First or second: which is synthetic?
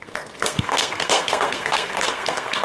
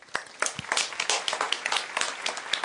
first